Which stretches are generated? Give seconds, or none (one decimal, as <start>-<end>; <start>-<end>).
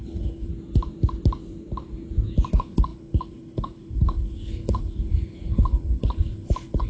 0.0-0.5; 2.5-6.9